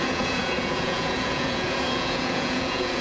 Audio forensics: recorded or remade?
remade